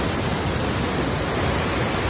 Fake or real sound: real